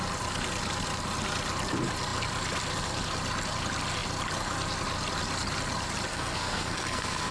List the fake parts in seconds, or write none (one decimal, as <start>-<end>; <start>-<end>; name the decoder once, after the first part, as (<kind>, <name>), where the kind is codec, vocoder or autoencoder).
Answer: 6.1-7.3 (codec, SNAC)